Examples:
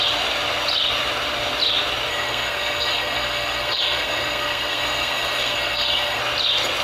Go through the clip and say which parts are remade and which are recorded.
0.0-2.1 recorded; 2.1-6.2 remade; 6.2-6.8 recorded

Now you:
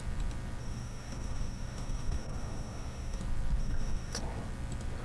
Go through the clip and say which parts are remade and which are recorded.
0.0-0.6 recorded; 0.6-3.2 remade; 3.2-3.6 recorded; 3.6-4.2 remade; 4.2-5.0 recorded